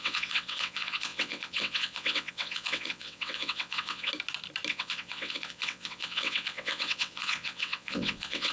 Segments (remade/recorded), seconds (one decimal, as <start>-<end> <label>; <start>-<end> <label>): 0.0-4.1 remade; 4.1-4.7 recorded; 4.7-8.5 remade